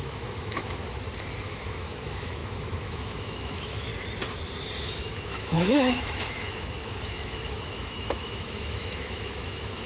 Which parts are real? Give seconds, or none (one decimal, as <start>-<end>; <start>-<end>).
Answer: 0.8-1.4; 3.9-4.8